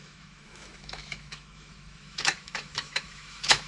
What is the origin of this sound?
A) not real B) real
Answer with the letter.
A